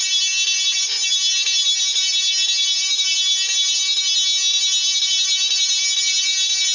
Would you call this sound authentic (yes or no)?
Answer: yes